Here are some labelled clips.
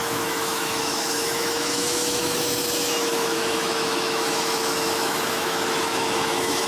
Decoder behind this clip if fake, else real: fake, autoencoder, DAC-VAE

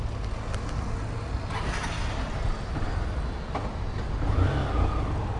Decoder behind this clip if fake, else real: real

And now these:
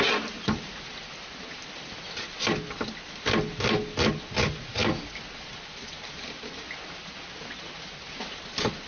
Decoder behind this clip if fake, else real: real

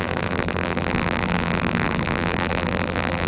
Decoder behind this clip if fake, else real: fake, vocoder, BigVGAN v2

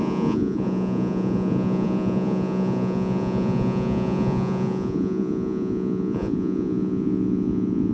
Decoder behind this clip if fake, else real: fake, vocoder, Vocos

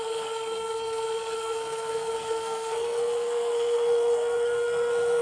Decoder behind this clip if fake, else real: fake, codec, SNAC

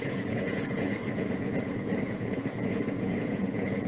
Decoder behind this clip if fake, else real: fake, vocoder, Vocos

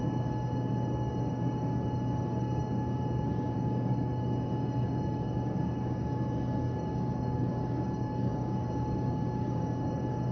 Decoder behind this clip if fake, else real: fake, codec, DAC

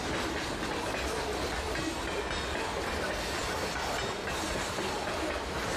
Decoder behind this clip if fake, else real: real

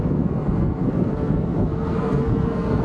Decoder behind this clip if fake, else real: fake, codec, SNAC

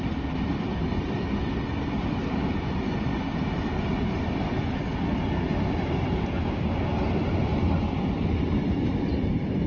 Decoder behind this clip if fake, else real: real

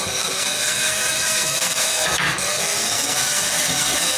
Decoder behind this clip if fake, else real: fake, codec, SNAC